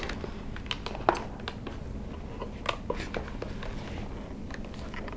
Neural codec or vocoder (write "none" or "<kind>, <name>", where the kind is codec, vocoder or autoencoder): none